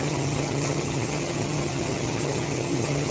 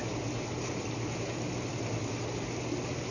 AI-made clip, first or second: first